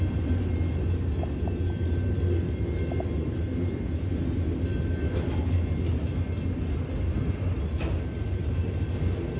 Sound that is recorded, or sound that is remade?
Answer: recorded